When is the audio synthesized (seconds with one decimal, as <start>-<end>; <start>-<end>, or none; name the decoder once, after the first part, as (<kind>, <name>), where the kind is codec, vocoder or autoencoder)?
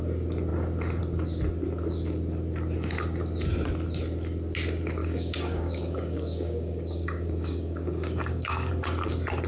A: 5.0-8.7 (codec, DAC)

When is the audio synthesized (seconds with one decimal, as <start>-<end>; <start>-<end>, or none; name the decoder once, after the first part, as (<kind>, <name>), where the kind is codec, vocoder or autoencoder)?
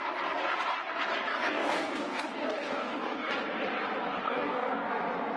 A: 1.3-3.3 (codec, DAC); 4.2-4.9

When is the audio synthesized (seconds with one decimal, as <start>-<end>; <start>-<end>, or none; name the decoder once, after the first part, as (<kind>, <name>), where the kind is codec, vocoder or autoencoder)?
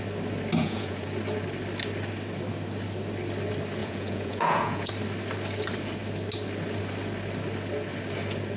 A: 0.6-1.1 (vocoder, Vocos); 3.8-4.9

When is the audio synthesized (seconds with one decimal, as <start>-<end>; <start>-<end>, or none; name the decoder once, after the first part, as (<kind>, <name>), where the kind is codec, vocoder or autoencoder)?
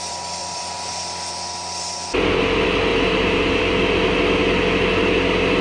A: 2.9-3.6 (vocoder, BigVGAN v2)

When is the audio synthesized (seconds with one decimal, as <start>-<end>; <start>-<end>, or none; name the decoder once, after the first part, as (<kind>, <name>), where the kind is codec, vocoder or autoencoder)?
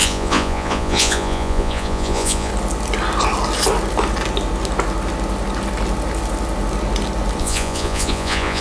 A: 0.0-2.5 (vocoder, Vocos); 7.4-8.6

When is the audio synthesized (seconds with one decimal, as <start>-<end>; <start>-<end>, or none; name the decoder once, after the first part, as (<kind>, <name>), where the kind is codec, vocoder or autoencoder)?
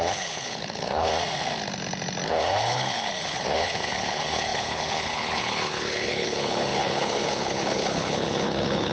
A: 0.0-1.1 (codec, HILCodec); 2.3-8.9